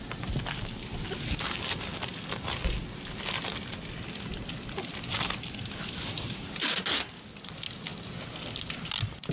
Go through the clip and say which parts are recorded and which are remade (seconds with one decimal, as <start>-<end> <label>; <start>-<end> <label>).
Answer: 0.0-9.3 recorded